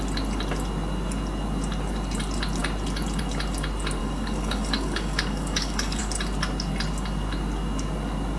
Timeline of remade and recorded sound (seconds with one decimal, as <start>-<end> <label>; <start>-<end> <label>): 0.0-4.0 recorded; 4.0-6.0 remade; 6.0-8.4 recorded